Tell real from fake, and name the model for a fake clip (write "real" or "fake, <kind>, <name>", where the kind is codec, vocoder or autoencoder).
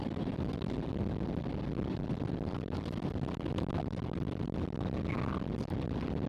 real